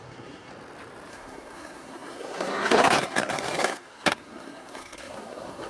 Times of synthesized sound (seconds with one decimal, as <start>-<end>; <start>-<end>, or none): 0.0-0.5; 1.1-5.7